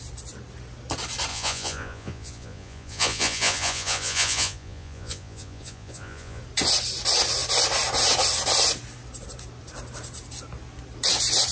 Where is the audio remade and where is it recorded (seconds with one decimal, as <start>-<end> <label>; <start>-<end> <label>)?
0.0-1.3 recorded; 1.3-6.4 remade; 6.4-11.5 recorded